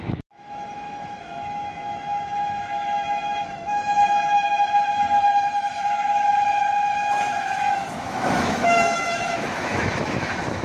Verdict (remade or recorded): remade